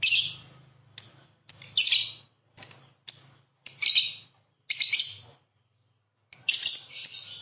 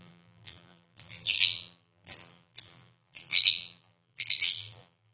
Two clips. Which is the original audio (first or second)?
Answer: first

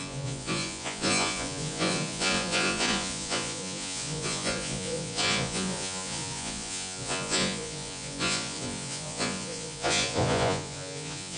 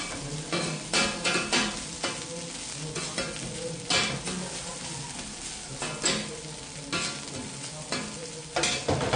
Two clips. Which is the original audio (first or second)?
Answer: second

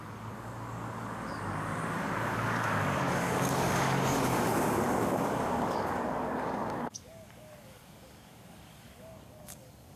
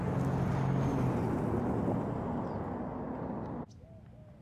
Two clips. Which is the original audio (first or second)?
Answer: second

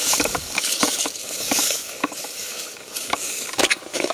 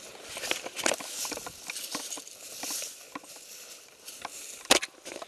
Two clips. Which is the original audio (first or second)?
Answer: second